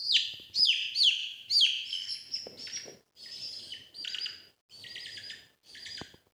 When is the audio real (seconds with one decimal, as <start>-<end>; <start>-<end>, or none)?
0.0-3.7; 4.6-6.3